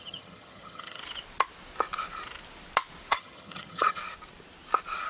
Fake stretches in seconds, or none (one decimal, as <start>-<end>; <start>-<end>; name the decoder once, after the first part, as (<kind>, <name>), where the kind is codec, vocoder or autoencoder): 0.0-1.0 (vocoder, HiFi-GAN); 3.1-4.0